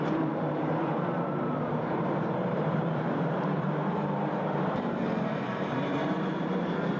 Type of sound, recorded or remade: remade